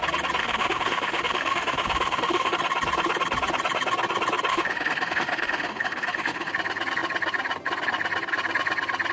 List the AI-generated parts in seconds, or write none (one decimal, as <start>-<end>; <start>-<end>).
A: 0.4-2.5; 4.5-6.5